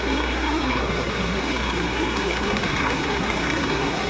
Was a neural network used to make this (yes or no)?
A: yes